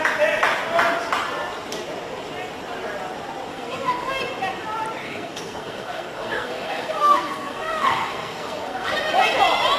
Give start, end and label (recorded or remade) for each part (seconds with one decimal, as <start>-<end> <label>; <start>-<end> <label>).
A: 0.0-3.5 recorded; 3.5-4.2 remade; 4.2-5.0 recorded; 5.0-8.9 remade; 8.9-9.8 recorded